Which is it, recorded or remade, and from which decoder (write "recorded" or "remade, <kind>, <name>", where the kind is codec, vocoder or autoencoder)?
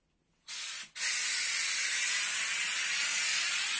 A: recorded